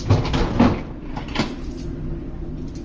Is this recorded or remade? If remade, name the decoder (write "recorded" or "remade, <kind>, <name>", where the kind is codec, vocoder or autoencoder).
recorded